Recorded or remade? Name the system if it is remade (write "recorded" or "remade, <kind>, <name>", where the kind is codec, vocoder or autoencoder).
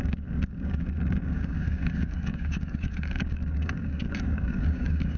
remade, codec, DAC